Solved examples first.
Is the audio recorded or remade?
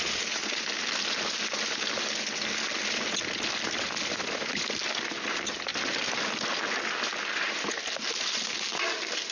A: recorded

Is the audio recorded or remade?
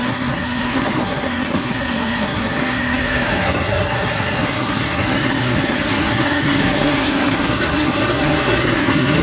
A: remade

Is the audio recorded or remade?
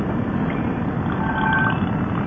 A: recorded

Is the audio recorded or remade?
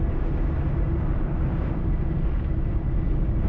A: recorded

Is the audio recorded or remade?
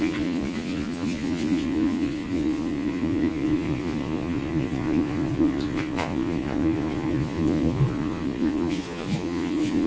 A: remade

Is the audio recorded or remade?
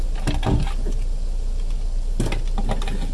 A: recorded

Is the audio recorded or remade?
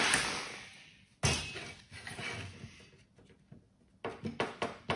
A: recorded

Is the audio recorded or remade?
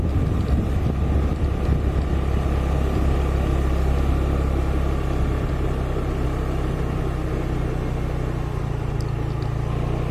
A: recorded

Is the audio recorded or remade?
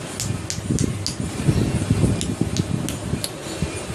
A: recorded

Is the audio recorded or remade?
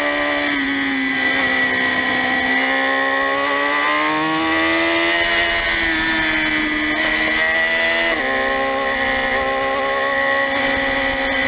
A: recorded